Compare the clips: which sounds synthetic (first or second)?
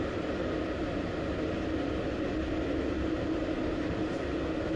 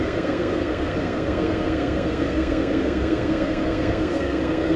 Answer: second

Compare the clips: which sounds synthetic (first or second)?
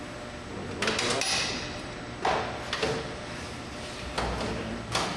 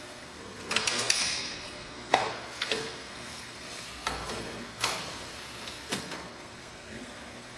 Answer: second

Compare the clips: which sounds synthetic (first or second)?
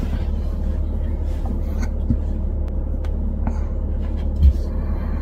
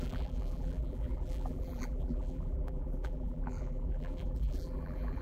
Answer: second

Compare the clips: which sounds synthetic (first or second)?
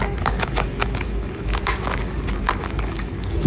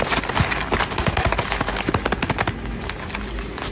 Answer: first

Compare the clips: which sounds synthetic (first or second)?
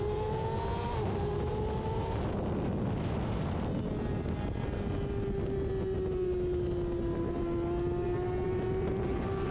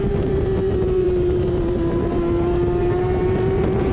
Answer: second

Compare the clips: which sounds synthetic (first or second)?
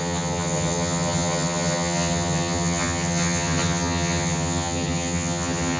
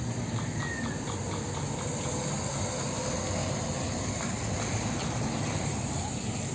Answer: first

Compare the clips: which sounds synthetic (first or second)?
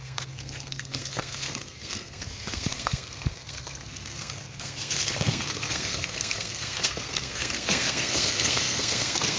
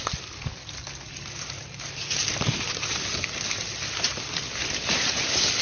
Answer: first